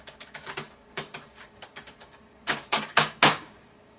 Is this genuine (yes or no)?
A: no